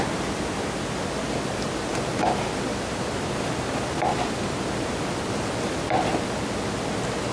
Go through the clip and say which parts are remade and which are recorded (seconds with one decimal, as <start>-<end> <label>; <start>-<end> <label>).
0.0-1.9 recorded; 1.9-5.0 remade; 5.0-7.3 recorded